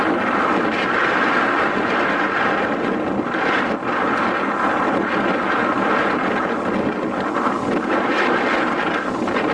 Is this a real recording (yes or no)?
yes